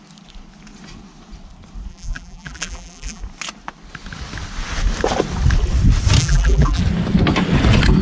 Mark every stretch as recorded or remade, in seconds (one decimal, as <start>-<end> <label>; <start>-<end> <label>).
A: 0.0-1.9 recorded; 1.9-3.2 remade; 3.2-6.2 recorded; 6.2-6.8 remade; 6.8-8.0 recorded